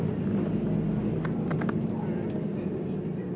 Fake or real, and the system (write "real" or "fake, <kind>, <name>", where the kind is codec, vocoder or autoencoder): real